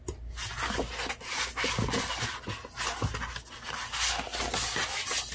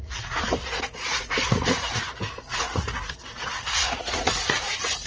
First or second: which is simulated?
second